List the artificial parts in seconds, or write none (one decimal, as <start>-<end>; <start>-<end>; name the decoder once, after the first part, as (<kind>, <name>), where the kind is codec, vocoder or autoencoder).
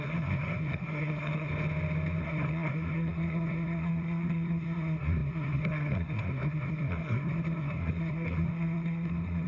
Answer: 0.0-1.5 (codec, SNAC); 2.2-9.5